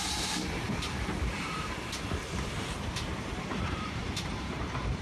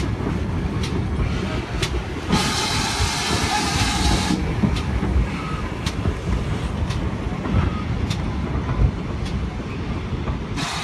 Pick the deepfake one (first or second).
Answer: first